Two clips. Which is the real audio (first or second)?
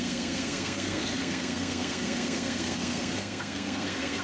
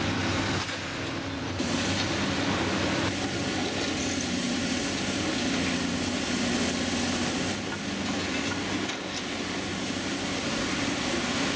second